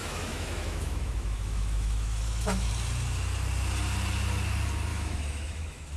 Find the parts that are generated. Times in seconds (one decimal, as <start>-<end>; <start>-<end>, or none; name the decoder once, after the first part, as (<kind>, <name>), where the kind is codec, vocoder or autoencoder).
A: 0.0-2.7 (autoencoder, DAC-VAE); 4.9-6.0